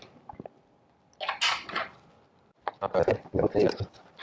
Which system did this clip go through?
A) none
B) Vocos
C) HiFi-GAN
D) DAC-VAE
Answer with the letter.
A